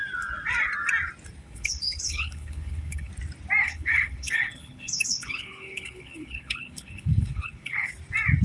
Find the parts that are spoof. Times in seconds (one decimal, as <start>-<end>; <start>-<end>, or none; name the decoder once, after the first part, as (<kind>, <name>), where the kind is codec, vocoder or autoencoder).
1.4-3.1 (codec, HILCodec); 3.6-7.9